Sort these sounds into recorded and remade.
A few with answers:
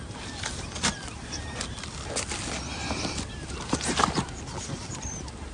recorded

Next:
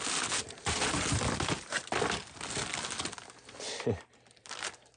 recorded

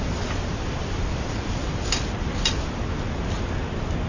recorded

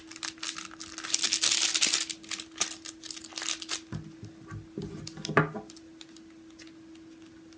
recorded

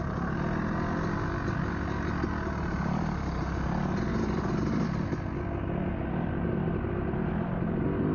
recorded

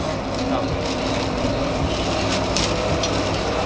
recorded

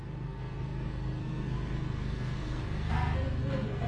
remade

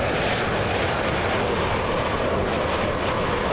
recorded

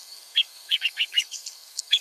remade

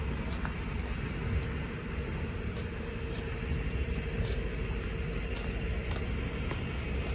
recorded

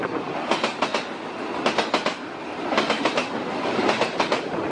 recorded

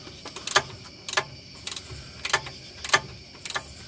recorded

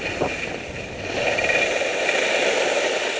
recorded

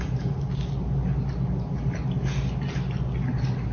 recorded